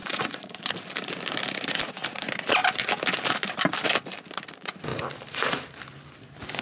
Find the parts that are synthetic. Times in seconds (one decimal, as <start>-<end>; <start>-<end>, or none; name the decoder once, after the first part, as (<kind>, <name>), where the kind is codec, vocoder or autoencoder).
0.0-0.7 (vocoder, BigVGAN v2); 4.9-5.7